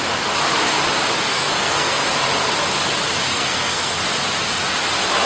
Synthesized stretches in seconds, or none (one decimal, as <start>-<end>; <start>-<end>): 1.3-2.2; 3.3-4.0